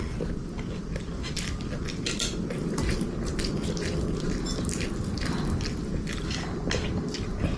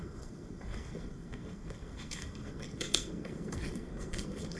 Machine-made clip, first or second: second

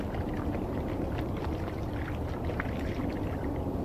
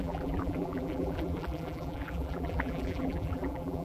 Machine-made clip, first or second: second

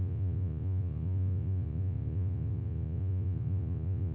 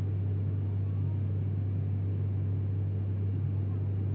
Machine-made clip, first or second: first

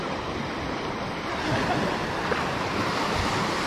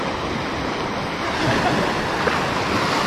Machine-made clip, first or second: first